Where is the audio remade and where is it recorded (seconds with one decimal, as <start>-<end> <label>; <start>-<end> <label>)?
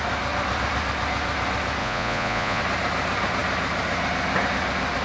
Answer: 0.0-1.8 recorded; 1.8-2.6 remade; 2.6-5.0 recorded